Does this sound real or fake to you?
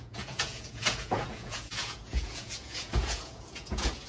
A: fake